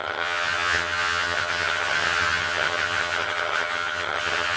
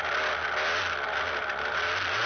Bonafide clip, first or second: second